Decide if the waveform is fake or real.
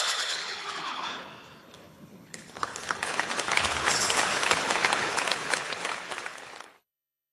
fake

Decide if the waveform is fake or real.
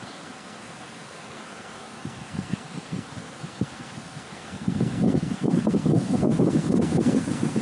fake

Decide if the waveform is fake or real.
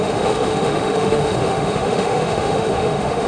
fake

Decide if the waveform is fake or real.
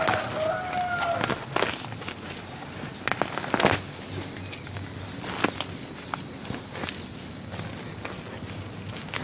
real